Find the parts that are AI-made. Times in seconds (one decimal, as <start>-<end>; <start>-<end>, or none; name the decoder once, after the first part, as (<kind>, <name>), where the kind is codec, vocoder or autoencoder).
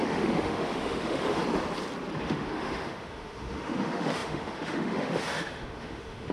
0.0-1.4 (autoencoder, DAC-VAE); 2.2-6.3